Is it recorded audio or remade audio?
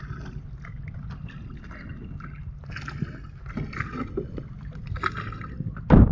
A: recorded